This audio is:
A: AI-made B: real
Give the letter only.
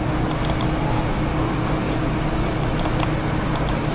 B